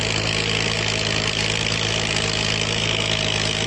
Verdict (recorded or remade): recorded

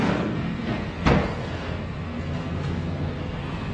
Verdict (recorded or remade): remade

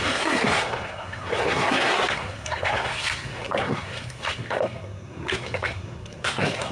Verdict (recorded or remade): remade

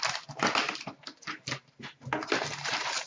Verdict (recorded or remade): recorded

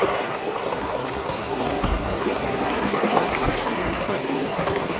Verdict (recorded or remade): remade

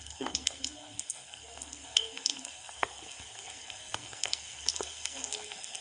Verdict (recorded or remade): remade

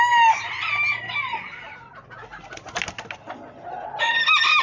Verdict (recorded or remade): recorded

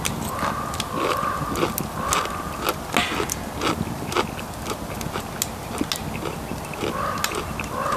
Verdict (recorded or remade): recorded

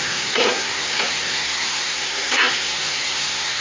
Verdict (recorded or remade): remade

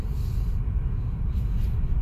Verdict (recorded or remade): recorded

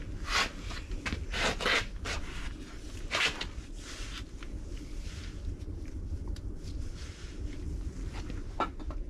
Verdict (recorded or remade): recorded